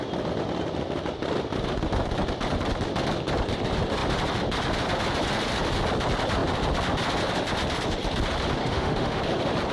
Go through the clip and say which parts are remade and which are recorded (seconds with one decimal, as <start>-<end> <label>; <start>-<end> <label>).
0.0-8.6 recorded; 8.6-9.2 remade; 9.2-9.7 recorded